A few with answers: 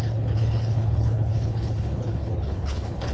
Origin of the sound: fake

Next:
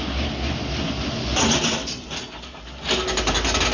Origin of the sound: real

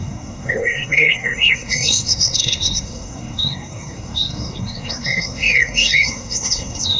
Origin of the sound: fake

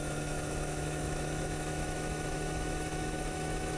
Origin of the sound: fake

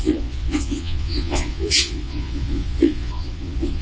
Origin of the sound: fake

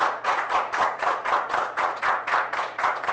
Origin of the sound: fake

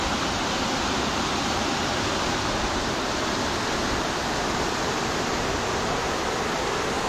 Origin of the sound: real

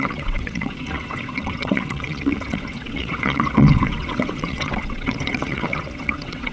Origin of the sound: fake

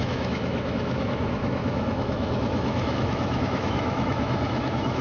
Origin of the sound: fake